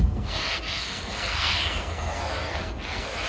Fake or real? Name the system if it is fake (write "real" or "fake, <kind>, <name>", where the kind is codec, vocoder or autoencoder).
fake, codec, SNAC